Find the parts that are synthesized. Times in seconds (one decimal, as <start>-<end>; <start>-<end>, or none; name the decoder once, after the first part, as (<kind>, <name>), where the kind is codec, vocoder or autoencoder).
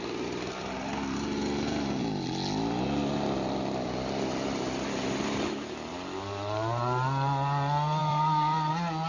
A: 8.0-8.7 (vocoder, BigVGAN v2)